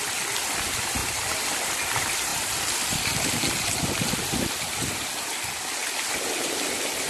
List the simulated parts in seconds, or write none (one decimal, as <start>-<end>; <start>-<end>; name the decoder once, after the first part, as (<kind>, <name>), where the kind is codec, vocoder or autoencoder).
none